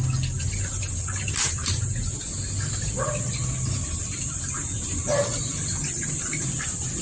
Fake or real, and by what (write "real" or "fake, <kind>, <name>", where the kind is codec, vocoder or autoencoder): real